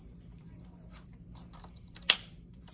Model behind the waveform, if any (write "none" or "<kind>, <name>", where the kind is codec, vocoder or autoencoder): vocoder, BigVGAN v2